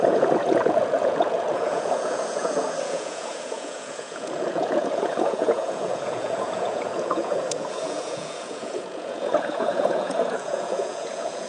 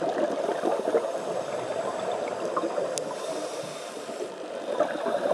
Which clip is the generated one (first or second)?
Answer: first